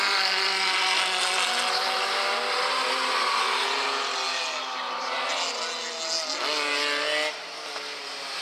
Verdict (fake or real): real